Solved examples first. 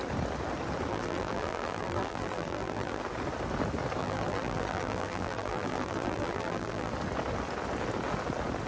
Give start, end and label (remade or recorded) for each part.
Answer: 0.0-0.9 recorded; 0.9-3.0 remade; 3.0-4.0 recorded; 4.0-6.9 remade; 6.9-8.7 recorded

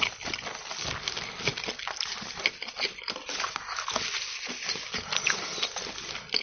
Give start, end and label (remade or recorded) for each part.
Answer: 0.0-6.4 recorded

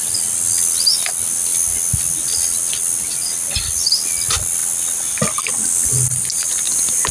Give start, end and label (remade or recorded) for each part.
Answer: 0.0-7.1 recorded

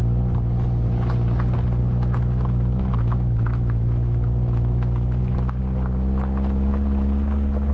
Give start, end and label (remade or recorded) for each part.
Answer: 0.0-1.8 recorded; 1.8-5.6 remade; 5.6-7.7 recorded

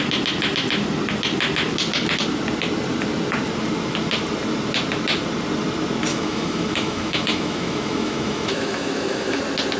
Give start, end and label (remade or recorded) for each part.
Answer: 0.0-6.1 recorded; 6.1-9.4 remade; 9.4-9.8 recorded

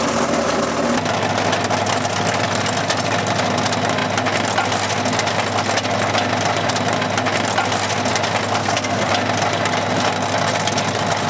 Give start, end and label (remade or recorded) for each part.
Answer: 0.0-8.6 recorded; 8.6-9.1 remade; 9.1-11.3 recorded

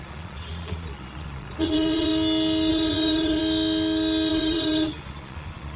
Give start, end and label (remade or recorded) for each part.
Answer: 0.0-2.1 remade; 2.1-2.7 recorded; 2.7-3.4 remade; 3.4-4.3 recorded; 4.3-5.8 remade